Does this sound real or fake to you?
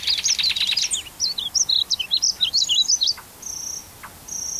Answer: real